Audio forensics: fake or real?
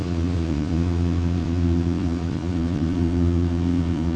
fake